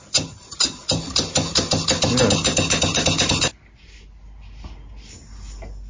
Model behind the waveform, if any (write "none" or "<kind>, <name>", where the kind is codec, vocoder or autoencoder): none